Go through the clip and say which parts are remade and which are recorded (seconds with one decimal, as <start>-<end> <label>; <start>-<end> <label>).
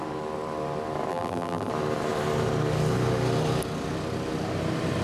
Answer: 0.0-1.1 recorded; 1.1-1.7 remade; 1.7-5.0 recorded